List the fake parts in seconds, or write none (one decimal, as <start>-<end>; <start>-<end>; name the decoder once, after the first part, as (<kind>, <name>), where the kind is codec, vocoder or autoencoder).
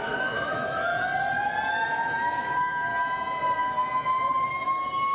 0.0-0.9 (autoencoder, DAC-VAE); 1.7-2.9; 4.5-5.1